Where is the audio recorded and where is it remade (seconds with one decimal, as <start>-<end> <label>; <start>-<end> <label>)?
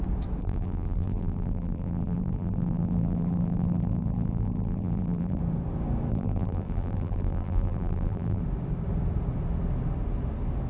0.0-0.4 recorded; 0.4-5.4 remade; 5.4-6.1 recorded; 6.1-8.4 remade; 8.4-10.7 recorded